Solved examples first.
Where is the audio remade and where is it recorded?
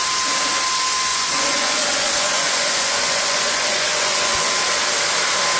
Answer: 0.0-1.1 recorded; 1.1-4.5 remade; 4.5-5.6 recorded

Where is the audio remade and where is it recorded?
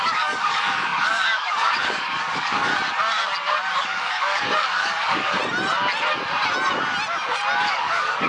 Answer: 0.0-2.7 remade; 2.7-3.8 recorded; 3.8-5.4 remade; 5.4-7.7 recorded; 7.7-8.3 remade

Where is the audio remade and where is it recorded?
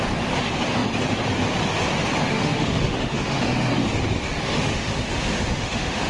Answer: 0.0-2.3 recorded; 2.3-3.7 remade; 3.7-4.4 recorded; 4.4-6.1 remade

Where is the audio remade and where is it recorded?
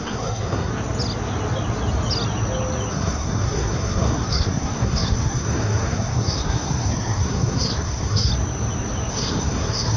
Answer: 0.0-0.7 remade; 0.7-2.9 recorded; 2.9-8.3 remade; 8.3-9.1 recorded; 9.1-10.0 remade